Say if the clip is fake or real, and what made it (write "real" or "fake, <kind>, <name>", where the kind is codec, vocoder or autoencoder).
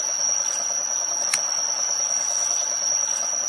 real